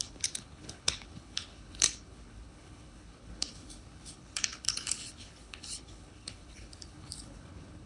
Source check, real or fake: fake